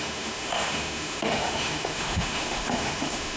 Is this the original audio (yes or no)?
no